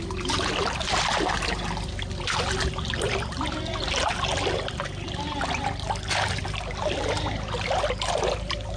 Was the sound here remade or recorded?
recorded